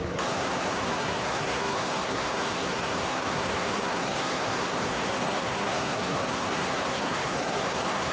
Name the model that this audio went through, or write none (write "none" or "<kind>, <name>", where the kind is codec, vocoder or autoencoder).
codec, SNAC